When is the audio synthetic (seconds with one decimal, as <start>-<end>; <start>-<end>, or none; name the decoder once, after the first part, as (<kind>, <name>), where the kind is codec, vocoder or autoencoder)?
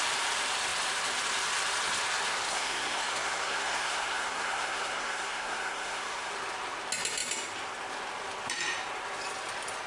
2.5-6.3 (codec, SNAC)